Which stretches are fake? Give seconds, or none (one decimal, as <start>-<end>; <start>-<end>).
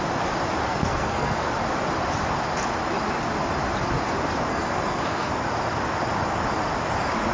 0.6-1.5; 4.5-5.3